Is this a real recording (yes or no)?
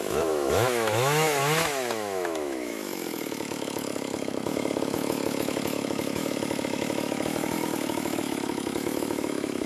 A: no